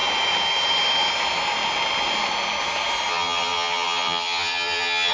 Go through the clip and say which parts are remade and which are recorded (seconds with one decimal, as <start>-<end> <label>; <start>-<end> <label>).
0.0-3.1 recorded; 3.1-5.1 remade